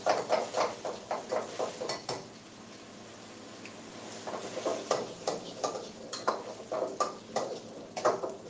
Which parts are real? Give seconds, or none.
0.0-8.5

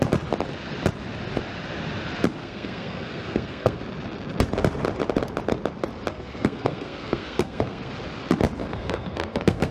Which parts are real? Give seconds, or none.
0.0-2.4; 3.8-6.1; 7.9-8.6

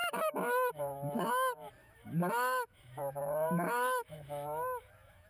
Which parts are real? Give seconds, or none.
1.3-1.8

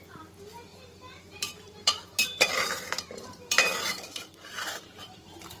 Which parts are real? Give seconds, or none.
none

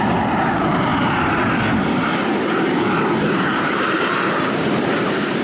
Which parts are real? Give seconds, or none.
0.9-3.5